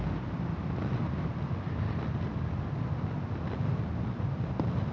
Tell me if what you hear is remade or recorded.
recorded